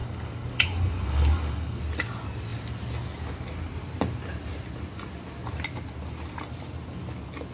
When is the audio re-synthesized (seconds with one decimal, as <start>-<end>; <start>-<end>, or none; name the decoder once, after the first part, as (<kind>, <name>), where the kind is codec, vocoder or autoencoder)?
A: 0.0-1.8 (codec, DAC)